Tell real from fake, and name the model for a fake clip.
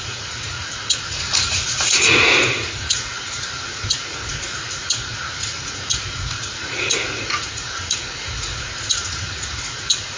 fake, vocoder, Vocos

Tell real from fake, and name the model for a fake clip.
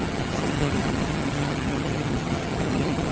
fake, vocoder, HiFi-GAN